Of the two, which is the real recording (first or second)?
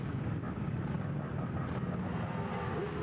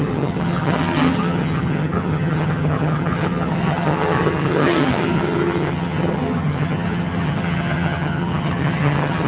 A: first